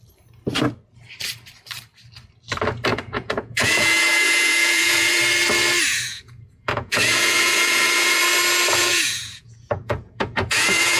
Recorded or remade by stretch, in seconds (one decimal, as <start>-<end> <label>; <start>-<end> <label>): 0.0-2.9 recorded; 2.9-5.2 remade; 5.2-5.9 recorded; 5.9-8.2 remade; 8.2-8.8 recorded; 8.8-11.0 remade